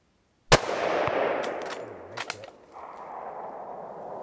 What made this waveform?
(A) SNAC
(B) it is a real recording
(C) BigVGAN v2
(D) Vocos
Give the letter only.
B